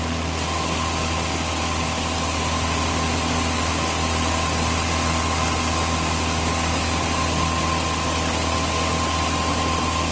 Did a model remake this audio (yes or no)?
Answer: no